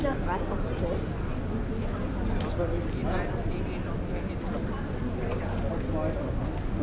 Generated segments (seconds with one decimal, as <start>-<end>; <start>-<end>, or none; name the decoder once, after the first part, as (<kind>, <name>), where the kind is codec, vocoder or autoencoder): none